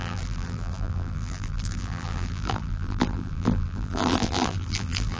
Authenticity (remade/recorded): remade